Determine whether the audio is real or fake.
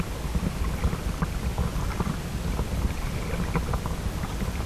real